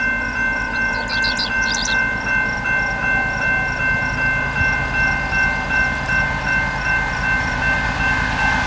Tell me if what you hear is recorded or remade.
recorded